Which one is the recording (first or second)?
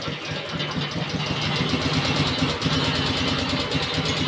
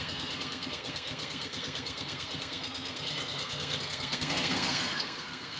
first